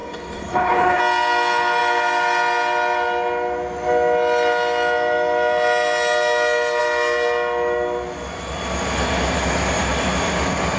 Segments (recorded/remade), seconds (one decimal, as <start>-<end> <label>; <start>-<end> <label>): 0.0-1.0 remade; 1.0-10.8 recorded